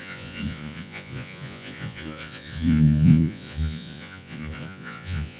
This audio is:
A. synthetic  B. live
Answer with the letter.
A